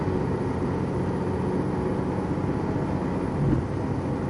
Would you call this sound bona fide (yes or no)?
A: yes